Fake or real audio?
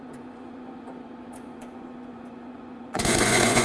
fake